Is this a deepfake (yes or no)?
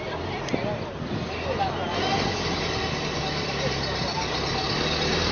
no